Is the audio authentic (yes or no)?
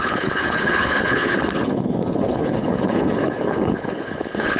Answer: no